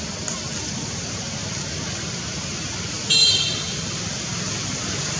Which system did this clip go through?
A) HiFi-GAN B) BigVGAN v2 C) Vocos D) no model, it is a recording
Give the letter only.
D